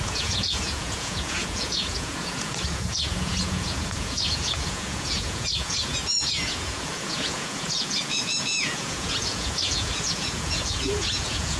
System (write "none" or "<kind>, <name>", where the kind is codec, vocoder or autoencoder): vocoder, Vocos